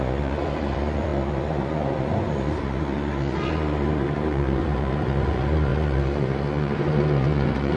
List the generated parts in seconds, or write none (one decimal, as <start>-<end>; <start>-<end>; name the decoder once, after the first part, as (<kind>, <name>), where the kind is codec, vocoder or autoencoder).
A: 0.0-7.8 (vocoder, Vocos)